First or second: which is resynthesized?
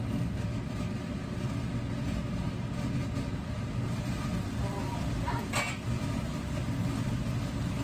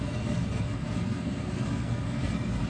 second